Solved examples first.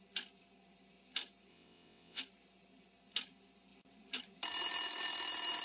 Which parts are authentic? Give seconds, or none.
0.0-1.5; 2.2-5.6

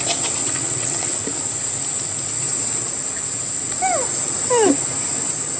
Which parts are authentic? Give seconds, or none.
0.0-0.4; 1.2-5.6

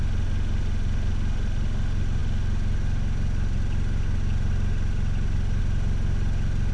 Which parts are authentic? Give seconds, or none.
0.0-6.7